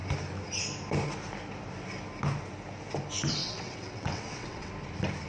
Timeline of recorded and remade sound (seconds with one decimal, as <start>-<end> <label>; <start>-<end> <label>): 0.0-3.4 recorded; 3.4-4.7 remade; 4.7-5.3 recorded